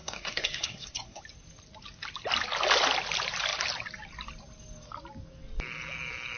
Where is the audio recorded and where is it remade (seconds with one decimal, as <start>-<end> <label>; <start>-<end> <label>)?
0.0-1.2 remade; 1.2-6.4 recorded